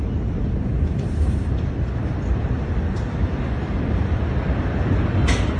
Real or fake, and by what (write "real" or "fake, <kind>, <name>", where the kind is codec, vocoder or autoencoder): real